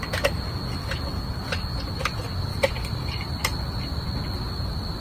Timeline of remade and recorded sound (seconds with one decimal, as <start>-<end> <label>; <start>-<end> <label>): 0.0-2.5 recorded; 2.5-4.0 remade; 4.0-5.0 recorded